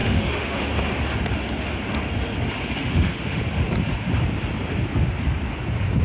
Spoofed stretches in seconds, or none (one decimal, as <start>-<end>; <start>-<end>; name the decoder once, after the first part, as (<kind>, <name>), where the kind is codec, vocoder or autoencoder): 0.0-0.6 (autoencoder, DAC-VAE); 2.8-3.4

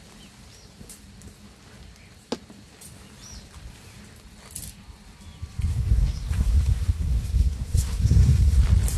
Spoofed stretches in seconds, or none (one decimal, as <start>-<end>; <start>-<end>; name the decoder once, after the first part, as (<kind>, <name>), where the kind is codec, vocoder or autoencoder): 5.7-8.6 (codec, SNAC)

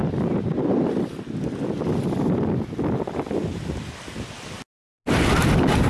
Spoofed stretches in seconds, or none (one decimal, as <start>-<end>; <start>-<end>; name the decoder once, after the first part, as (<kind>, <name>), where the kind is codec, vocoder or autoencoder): none

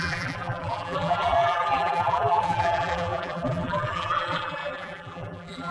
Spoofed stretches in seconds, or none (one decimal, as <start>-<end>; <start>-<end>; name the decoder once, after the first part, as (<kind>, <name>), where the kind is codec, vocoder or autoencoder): 0.0-5.7 (vocoder, BigVGAN v2)

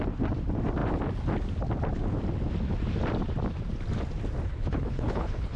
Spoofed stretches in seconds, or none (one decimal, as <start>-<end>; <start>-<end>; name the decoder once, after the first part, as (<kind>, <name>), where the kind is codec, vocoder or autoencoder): 4.5-5.6 (codec, HILCodec)

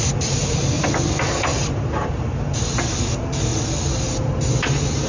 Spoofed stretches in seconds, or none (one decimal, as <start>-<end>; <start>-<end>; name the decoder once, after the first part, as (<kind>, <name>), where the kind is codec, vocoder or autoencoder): 1.5-2.6 (vocoder, BigVGAN v2)